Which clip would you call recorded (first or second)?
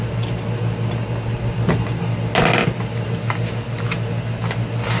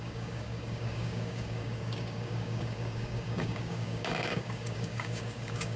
first